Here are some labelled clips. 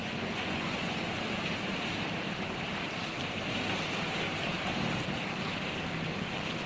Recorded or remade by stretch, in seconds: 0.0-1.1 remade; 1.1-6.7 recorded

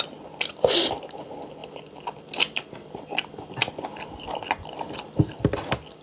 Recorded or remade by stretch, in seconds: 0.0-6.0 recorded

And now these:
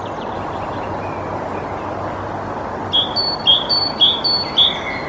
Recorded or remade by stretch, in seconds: 0.0-5.1 recorded